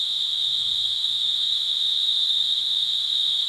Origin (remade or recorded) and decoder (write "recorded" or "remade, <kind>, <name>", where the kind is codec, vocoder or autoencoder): remade, autoencoder, DAC-VAE